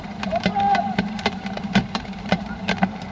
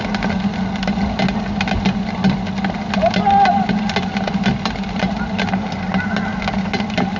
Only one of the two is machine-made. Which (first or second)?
first